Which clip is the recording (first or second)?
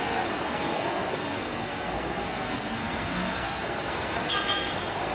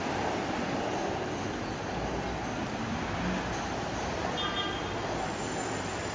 second